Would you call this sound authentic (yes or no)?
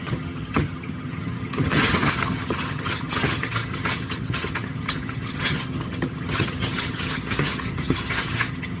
no